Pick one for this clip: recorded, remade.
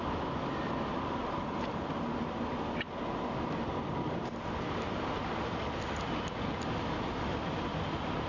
recorded